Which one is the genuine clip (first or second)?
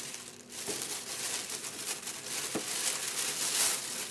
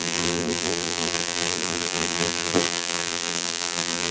first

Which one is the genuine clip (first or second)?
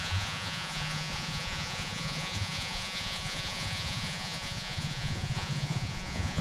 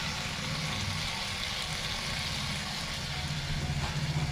second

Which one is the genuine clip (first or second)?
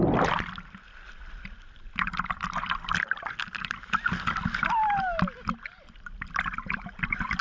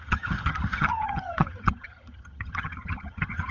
first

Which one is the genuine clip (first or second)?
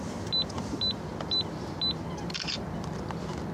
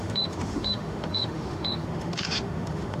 first